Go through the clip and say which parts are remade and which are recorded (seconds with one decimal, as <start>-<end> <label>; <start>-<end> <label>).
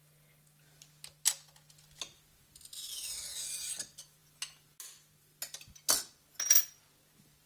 0.0-7.5 recorded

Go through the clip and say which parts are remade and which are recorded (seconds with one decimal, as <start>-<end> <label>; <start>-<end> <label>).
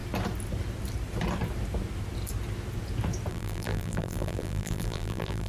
0.0-3.3 recorded; 3.3-5.5 remade